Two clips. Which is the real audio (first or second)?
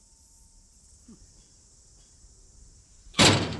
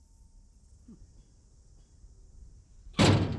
second